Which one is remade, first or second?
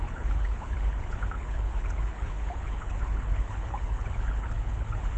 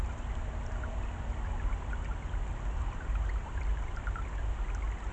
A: first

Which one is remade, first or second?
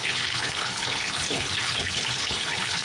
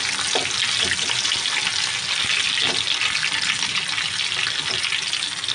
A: first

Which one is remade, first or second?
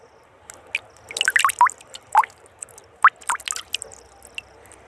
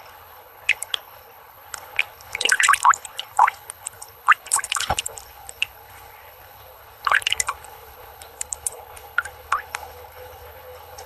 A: second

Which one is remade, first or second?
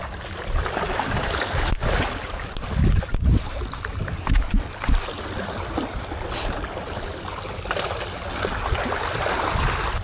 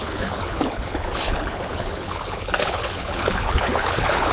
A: second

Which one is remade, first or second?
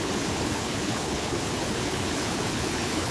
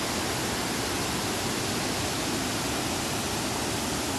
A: first